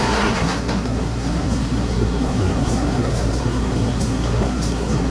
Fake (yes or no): yes